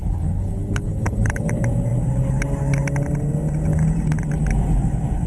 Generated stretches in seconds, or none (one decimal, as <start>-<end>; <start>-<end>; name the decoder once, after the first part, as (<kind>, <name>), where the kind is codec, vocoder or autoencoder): 0.0-1.5 (codec, HILCodec)